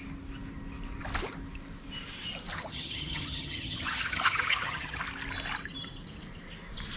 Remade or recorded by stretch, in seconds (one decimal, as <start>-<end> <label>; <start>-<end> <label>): 0.0-2.5 recorded; 2.5-5.0 remade; 5.0-7.0 recorded